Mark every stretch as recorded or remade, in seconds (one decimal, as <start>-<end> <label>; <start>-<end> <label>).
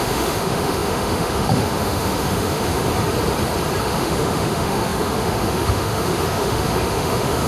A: 0.0-2.9 remade; 2.9-3.8 recorded; 3.8-7.5 remade